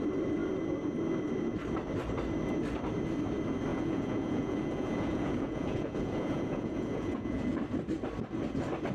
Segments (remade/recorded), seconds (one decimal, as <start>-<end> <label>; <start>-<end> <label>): 0.0-3.7 recorded; 3.7-7.6 remade; 7.6-8.9 recorded